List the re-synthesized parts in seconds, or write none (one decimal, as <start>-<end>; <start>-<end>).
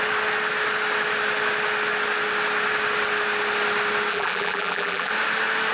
4.1-5.1